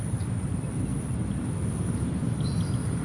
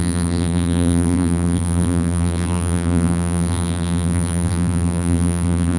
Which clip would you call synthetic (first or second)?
second